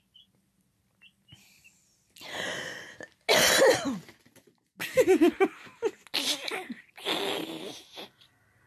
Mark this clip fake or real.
real